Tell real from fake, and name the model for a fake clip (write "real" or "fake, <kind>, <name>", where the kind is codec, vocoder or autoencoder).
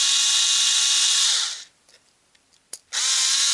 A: real